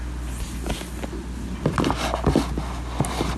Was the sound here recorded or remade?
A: recorded